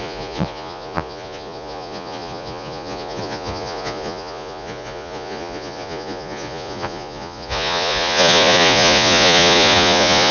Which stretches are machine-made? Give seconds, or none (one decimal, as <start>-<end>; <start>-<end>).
0.0-10.3